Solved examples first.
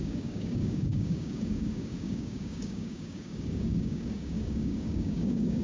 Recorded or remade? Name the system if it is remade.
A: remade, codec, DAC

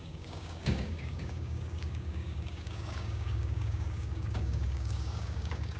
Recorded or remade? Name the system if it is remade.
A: remade, codec, DAC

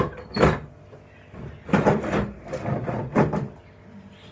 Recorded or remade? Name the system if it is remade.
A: recorded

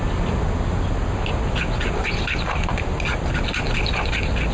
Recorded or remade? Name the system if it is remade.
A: recorded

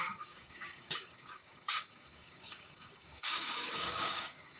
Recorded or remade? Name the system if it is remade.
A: remade, codec, DAC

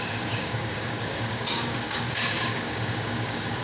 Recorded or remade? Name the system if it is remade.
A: remade, codec, DAC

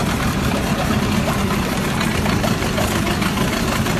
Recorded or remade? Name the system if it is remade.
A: recorded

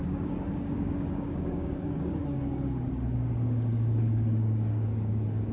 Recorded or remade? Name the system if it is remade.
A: remade, codec, DAC